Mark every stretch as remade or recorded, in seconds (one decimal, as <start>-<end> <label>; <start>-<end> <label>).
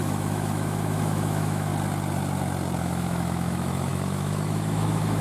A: 0.0-1.7 remade; 1.7-2.8 recorded; 2.8-5.2 remade